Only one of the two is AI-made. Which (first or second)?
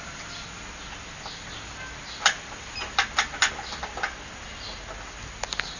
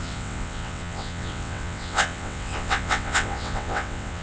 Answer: second